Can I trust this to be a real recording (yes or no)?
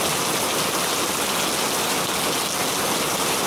yes